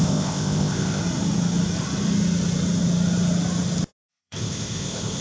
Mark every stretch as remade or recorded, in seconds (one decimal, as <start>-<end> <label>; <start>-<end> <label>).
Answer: 0.0-1.0 remade; 1.0-4.1 recorded; 4.1-5.2 remade

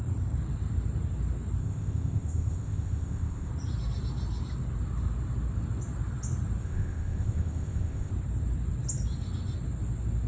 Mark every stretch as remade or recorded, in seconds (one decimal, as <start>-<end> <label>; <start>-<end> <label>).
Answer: 0.0-1.6 recorded; 1.6-3.5 remade; 3.5-6.6 recorded; 6.6-8.1 remade; 8.1-10.3 recorded

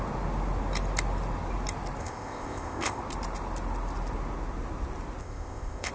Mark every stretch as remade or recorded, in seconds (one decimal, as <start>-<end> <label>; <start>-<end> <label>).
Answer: 0.0-2.0 recorded; 2.0-3.0 remade; 3.0-5.2 recorded; 5.2-5.9 remade

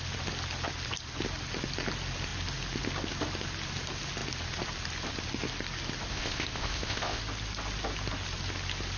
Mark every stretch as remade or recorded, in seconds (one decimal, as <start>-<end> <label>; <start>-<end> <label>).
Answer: 0.0-6.1 recorded; 6.1-7.2 remade; 7.2-9.0 recorded